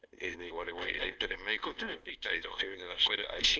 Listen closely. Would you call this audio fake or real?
fake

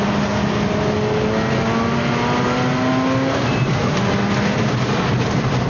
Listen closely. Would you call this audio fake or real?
real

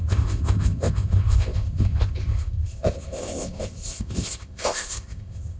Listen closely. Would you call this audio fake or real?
fake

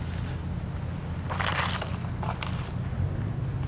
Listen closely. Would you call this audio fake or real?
real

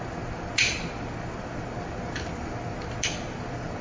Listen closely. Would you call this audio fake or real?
real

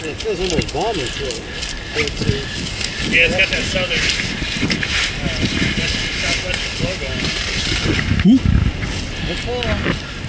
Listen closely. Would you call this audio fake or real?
real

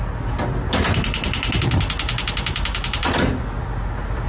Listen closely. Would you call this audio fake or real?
real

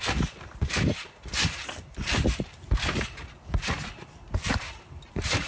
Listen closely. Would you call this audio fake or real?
real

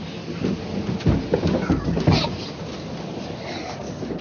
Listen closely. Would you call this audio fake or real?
real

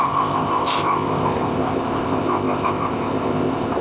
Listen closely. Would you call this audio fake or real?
fake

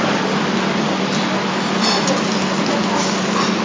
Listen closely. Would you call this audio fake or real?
real